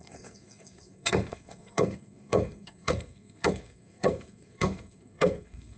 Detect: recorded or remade remade